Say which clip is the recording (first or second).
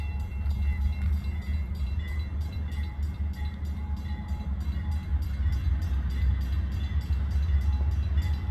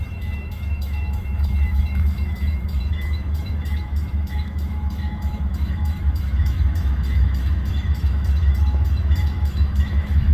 first